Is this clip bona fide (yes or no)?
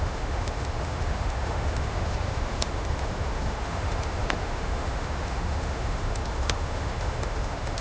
no